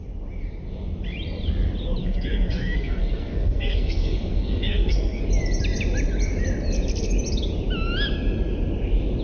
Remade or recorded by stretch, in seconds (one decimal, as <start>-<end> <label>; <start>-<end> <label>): 0.0-2.0 recorded; 2.0-5.2 remade; 5.2-9.2 recorded